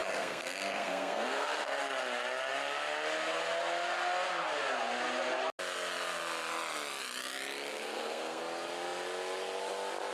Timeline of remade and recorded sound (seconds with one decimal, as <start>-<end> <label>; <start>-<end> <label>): 0.0-1.8 remade; 1.8-7.7 recorded; 7.7-8.4 remade; 8.4-10.1 recorded